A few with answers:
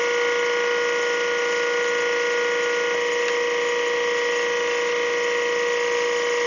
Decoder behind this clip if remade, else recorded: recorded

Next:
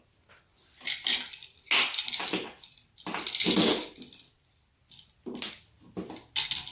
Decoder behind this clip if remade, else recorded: recorded